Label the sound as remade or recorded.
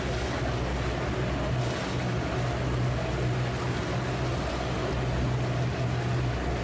recorded